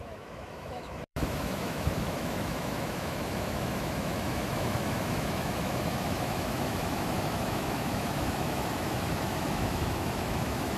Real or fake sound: fake